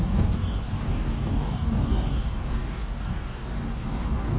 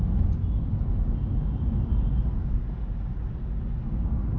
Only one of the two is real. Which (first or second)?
second